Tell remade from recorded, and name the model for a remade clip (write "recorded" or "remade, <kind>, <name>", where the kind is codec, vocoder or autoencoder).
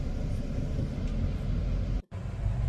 recorded